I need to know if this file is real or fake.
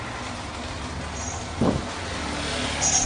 real